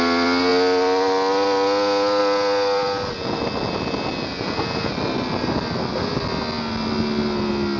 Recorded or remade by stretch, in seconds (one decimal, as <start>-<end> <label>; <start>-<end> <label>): 0.0-7.8 recorded